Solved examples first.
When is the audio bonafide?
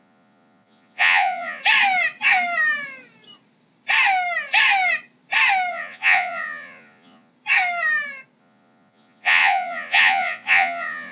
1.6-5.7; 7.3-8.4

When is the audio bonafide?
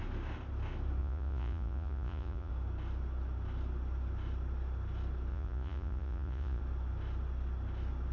0.0-1.0; 2.5-5.3; 6.6-8.1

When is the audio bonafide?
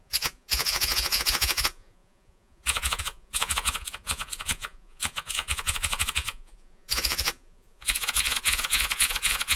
none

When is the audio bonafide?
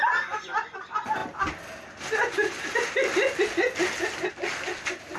0.0-5.2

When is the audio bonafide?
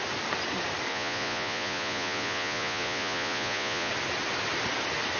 0.0-0.9; 3.9-5.2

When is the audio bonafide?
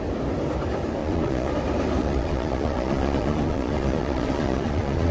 0.0-1.0; 1.5-2.0